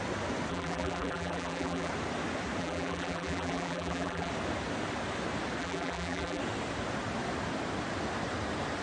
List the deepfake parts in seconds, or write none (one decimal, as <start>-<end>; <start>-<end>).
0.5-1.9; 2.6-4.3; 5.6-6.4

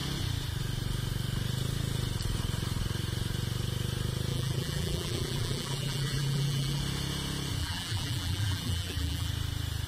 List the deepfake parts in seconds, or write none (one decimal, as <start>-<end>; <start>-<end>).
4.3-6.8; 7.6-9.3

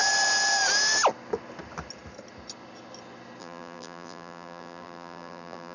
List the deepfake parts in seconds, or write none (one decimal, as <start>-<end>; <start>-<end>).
3.4-5.7

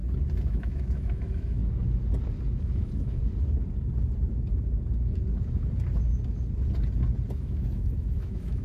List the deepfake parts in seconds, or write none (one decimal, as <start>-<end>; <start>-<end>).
0.5-1.6; 2.6-3.2; 7.3-8.6